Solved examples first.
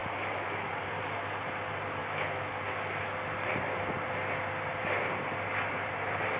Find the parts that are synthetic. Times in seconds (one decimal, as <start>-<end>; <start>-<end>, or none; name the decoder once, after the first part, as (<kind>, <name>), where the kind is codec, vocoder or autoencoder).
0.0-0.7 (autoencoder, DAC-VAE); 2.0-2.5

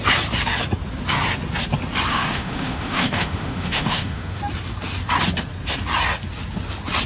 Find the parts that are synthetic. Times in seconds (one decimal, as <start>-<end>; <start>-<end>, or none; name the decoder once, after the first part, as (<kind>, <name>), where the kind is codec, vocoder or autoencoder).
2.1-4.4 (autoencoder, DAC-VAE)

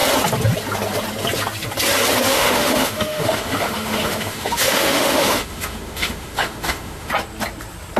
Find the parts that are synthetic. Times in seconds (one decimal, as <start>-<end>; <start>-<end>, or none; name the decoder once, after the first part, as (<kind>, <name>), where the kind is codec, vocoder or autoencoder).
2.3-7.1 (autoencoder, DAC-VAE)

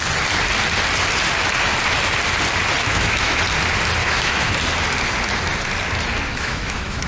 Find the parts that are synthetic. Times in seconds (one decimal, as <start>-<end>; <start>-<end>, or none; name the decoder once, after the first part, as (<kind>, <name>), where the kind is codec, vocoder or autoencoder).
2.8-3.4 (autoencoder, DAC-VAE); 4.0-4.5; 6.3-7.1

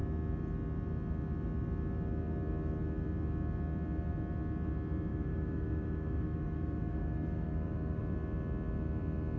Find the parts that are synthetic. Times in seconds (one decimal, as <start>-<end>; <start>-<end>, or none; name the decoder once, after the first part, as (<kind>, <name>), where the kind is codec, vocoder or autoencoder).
5.1-8.0 (autoencoder, DAC-VAE)

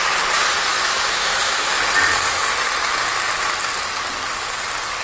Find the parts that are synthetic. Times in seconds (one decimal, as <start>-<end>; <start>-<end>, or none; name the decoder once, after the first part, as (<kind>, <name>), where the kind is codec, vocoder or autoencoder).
0.7-1.7 (autoencoder, DAC-VAE)